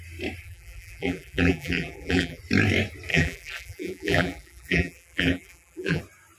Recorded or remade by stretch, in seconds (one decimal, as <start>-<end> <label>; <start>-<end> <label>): 0.0-0.4 recorded; 0.4-2.4 remade; 2.4-3.1 recorded; 3.1-6.0 remade; 6.0-6.4 recorded